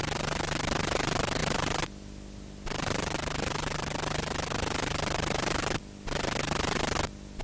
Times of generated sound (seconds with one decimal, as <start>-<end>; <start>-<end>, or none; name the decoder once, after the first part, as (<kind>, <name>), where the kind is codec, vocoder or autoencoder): none